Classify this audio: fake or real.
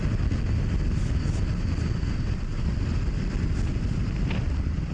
real